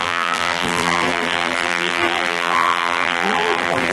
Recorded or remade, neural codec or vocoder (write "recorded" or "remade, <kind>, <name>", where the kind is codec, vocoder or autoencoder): remade, vocoder, BigVGAN v2